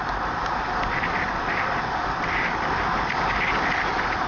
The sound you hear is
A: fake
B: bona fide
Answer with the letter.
B